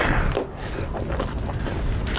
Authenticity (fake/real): real